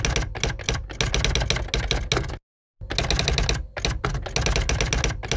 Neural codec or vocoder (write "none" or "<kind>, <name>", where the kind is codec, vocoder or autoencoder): none